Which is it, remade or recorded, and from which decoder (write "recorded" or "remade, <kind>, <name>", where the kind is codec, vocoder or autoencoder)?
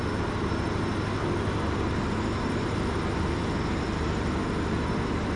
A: recorded